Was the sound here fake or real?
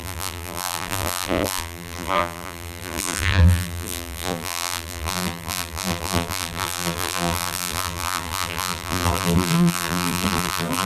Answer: fake